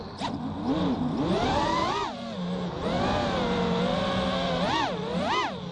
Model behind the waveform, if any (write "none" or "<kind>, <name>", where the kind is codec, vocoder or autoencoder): none